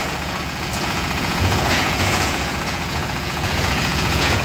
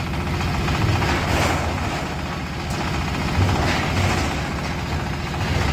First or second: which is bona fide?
second